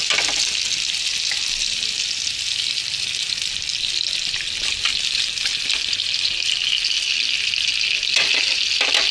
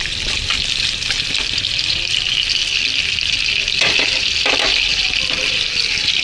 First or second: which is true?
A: first